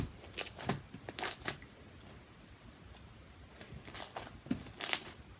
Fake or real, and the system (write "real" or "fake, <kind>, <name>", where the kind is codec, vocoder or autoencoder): real